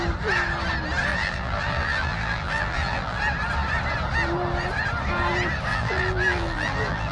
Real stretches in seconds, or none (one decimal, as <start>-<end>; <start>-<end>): 0.0-1.1; 3.2-5.7